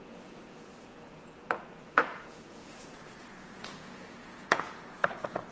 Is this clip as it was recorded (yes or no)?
no